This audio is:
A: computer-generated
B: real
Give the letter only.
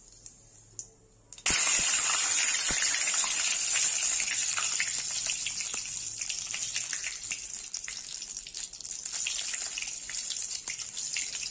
B